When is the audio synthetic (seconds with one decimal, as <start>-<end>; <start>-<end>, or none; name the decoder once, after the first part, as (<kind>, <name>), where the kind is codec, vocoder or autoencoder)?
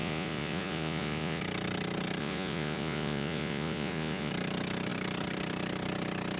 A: 0.0-1.4 (vocoder, Vocos); 2.2-4.3